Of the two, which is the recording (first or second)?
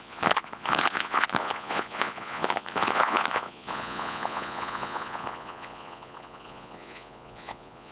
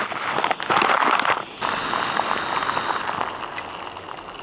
second